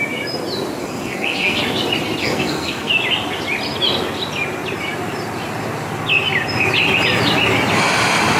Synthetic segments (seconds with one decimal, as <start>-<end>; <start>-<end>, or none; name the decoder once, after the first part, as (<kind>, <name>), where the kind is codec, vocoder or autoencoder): 0.8-1.6 (codec, SNAC); 2.2-2.9